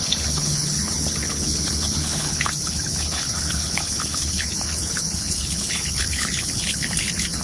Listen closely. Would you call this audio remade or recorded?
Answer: remade